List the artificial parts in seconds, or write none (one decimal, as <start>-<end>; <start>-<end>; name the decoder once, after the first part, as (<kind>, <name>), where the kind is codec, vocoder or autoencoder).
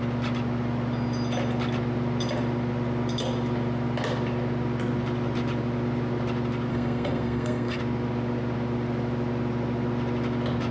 6.7-7.8 (codec, SNAC)